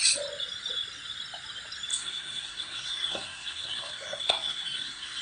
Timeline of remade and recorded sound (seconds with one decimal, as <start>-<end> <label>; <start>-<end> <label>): 0.0-1.9 recorded; 1.9-5.2 remade